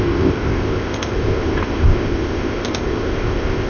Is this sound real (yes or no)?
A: no